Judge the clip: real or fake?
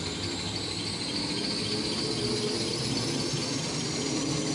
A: real